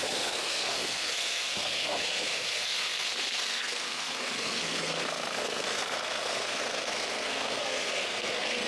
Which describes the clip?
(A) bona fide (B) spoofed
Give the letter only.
B